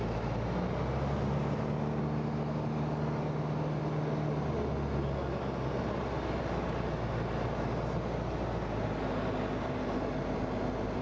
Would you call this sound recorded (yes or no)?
yes